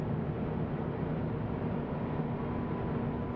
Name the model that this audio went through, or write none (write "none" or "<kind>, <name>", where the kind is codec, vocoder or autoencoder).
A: none